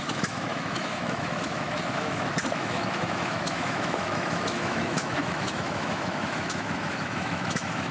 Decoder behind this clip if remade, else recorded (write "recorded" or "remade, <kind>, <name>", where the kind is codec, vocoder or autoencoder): remade, autoencoder, DAC-VAE